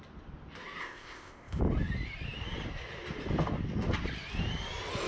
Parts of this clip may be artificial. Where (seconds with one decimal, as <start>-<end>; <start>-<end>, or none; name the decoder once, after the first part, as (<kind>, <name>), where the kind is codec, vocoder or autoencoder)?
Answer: 0.8-1.6 (codec, ZipCodec)